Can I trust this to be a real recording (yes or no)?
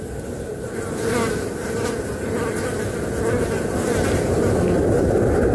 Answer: yes